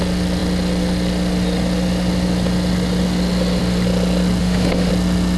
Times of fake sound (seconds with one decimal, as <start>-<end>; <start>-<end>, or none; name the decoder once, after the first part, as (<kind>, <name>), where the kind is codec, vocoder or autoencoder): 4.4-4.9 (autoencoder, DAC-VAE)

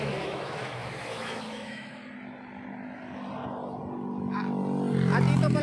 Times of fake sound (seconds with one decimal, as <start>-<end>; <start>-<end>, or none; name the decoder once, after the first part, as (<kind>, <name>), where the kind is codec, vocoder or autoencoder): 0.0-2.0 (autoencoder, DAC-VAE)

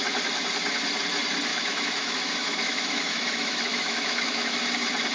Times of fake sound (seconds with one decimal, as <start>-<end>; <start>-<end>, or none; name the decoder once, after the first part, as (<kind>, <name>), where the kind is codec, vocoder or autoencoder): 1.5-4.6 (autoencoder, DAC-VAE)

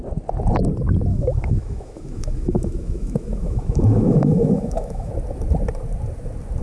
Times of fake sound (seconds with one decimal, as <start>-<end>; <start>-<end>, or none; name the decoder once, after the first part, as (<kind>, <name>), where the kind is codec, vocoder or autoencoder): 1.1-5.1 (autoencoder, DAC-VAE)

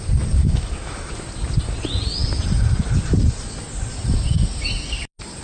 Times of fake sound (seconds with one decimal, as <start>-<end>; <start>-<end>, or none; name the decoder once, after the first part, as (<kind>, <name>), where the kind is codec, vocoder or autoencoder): 0.4-1.1 (autoencoder, DAC-VAE)